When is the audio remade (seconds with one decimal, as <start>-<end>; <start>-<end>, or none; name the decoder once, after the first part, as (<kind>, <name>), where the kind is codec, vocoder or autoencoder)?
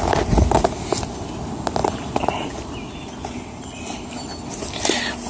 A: none